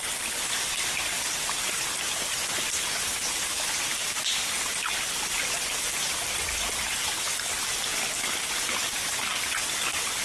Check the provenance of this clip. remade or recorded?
recorded